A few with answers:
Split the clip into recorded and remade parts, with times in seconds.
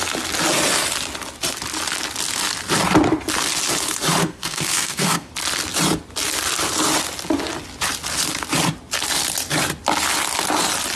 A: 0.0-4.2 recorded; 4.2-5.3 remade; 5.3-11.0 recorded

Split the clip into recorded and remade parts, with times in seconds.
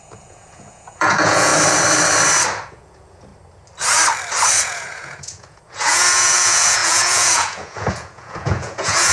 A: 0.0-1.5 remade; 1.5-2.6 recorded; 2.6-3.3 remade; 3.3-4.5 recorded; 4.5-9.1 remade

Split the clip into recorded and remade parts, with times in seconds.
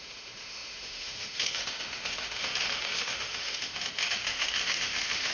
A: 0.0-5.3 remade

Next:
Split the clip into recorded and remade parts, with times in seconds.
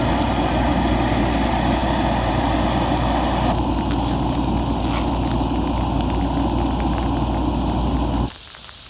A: 0.0-8.9 recorded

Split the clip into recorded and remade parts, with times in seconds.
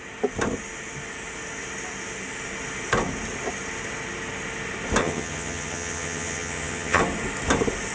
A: 0.0-5.0 recorded; 5.0-7.0 remade; 7.0-7.9 recorded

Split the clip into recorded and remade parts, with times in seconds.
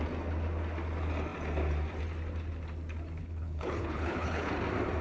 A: 0.0-3.2 recorded; 3.2-4.5 remade; 4.5-5.0 recorded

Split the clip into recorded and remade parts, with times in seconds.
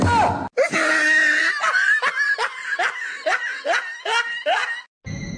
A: 0.0-5.4 recorded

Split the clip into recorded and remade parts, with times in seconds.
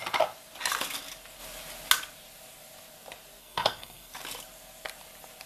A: 0.0-3.4 recorded; 3.4-4.1 remade; 4.1-5.5 recorded